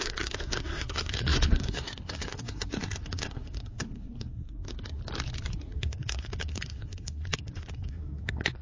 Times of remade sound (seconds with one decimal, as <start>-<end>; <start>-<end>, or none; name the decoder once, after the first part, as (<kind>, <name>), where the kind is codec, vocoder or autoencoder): 0.0-5.0 (codec, SNAC); 5.5-8.6